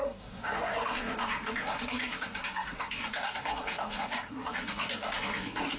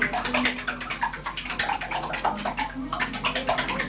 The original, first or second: second